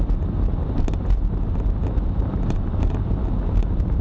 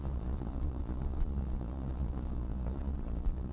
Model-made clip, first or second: second